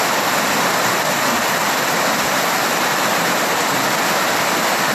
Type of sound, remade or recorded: recorded